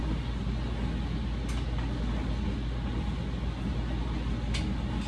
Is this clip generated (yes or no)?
no